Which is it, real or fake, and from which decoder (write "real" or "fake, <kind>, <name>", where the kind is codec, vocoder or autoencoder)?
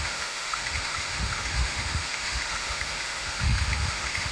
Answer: fake, autoencoder, DAC-VAE